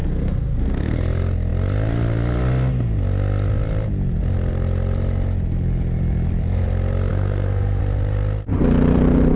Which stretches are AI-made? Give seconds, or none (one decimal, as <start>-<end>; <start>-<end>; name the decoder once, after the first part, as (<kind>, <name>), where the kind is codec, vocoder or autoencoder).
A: 0.0-1.0 (codec, SNAC); 7.1-7.8